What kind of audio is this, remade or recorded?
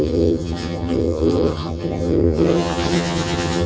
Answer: remade